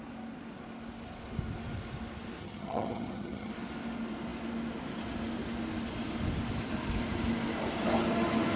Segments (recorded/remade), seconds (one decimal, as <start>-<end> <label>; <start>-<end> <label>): 0.0-2.4 recorded; 2.4-3.5 remade; 3.5-8.6 recorded